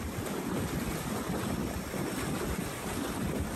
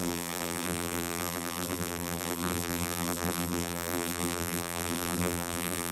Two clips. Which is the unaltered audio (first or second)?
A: first